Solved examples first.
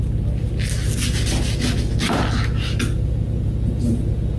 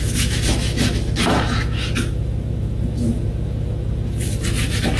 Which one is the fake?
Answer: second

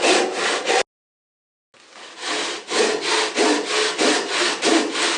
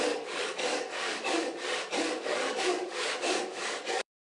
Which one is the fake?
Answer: second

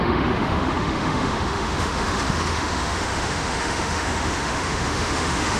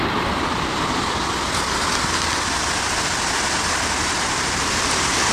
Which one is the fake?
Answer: first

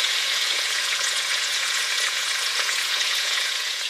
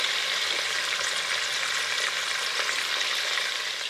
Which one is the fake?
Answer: first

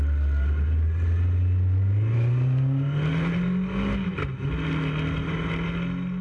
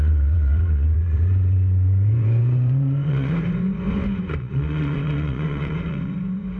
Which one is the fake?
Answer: second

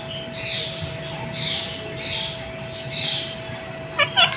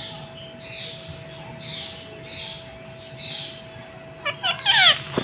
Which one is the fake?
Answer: first